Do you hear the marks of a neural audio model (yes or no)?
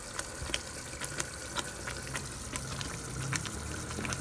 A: no